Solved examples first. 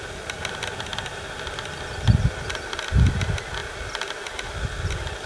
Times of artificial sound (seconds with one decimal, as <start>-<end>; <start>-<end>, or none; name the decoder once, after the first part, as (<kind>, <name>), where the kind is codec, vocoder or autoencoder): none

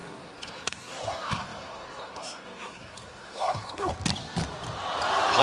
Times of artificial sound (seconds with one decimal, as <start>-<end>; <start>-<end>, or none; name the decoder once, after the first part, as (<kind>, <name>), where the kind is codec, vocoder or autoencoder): 0.0-3.9 (codec, SNAC)

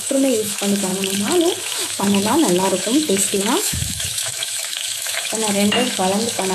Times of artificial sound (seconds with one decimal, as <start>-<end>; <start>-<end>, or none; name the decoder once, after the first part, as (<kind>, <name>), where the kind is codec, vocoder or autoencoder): 0.0-0.9 (autoencoder, DAC-VAE); 1.6-6.5

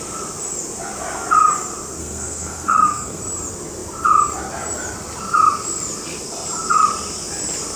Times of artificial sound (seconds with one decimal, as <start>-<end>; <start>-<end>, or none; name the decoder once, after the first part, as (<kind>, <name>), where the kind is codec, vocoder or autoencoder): 2.0-3.2 (codec, SNAC)

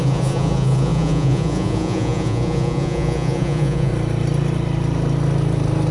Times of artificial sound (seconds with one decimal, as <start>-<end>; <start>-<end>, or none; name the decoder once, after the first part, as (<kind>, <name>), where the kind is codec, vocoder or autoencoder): 0.0-3.9 (vocoder, Vocos)